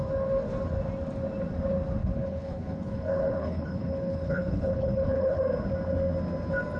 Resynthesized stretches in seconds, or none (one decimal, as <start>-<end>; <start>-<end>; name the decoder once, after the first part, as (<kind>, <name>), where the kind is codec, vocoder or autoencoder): 2.0-5.4 (codec, HILCodec)